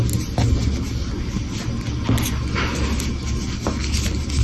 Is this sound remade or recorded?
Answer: recorded